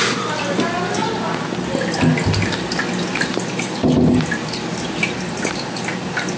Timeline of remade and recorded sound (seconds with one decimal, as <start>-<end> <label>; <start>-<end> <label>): 0.0-6.4 recorded